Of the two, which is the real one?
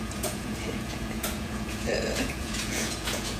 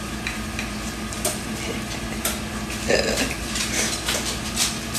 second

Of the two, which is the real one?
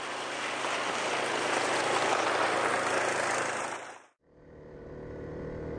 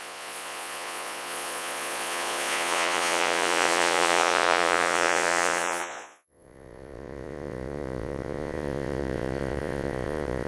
first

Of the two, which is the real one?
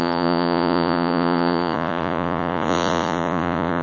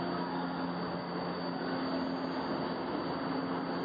second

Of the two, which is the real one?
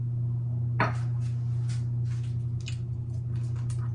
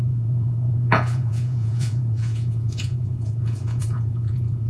first